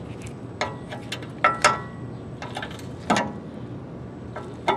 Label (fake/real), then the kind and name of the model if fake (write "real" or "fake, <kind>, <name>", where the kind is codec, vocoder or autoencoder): real